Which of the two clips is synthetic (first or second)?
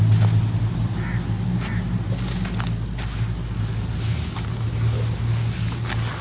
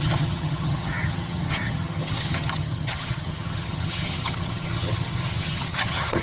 second